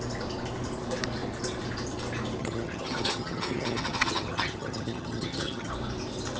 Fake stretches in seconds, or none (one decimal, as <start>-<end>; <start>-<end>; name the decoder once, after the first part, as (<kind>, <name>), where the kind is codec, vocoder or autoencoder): 2.4-5.7 (vocoder, HiFi-GAN)